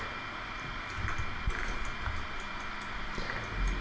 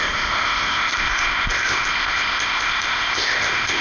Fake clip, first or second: second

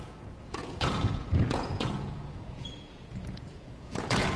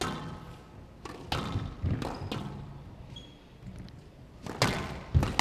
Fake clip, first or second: first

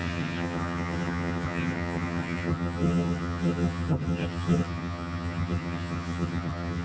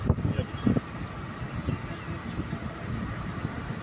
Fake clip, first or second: first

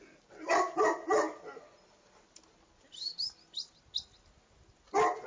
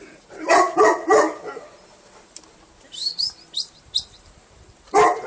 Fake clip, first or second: second